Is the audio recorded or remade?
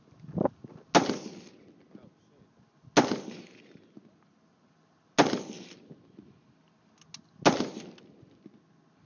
recorded